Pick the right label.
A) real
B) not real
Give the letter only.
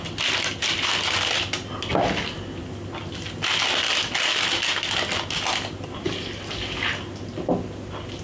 A